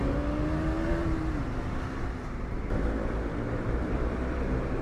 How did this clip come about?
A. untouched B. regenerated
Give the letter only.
A